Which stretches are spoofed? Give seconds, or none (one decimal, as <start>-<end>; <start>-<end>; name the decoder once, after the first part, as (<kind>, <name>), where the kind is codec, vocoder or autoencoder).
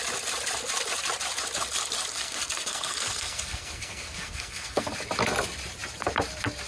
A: 2.1-4.9 (codec, SNAC)